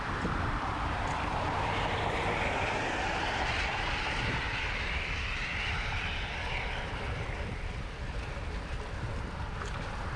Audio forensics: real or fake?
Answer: fake